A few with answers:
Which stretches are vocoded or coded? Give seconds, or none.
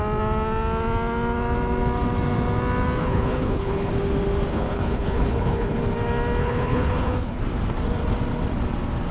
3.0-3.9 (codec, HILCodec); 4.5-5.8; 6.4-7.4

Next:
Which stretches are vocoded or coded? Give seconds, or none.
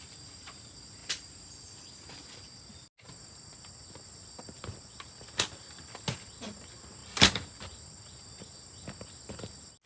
none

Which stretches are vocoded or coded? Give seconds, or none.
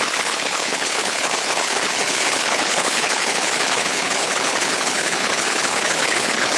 0.0-6.6 (codec, HILCodec)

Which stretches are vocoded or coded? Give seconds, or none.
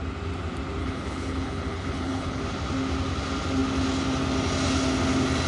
0.8-2.4 (codec, HILCodec)